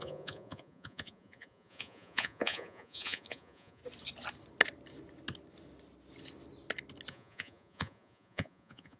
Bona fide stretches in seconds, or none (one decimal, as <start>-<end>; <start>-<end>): 3.8-7.1